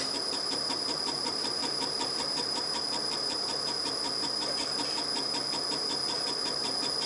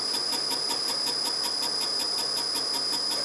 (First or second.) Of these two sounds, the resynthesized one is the first